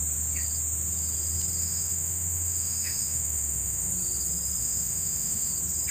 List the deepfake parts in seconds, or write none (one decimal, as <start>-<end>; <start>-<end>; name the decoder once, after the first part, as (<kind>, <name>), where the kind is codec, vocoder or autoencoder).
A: 1.6-3.9 (autoencoder, DAC-VAE); 4.6-5.5